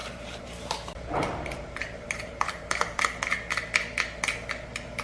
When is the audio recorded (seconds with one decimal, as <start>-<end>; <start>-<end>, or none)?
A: 3.0-5.0